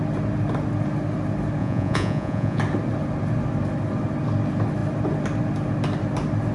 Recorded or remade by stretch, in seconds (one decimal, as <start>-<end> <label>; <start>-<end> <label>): 0.0-1.6 recorded; 1.6-2.6 remade; 2.6-6.5 recorded